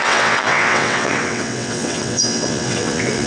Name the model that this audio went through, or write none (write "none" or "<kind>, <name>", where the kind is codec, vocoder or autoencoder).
vocoder, WaveNeXt